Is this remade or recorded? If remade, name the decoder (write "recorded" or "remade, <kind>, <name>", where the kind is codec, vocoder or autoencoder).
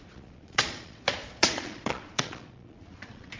remade, vocoder, Vocos